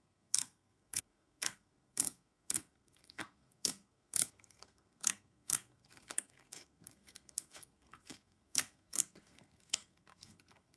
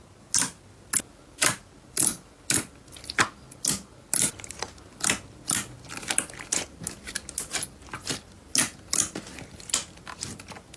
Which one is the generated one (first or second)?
first